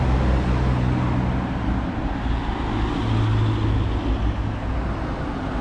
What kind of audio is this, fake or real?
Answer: real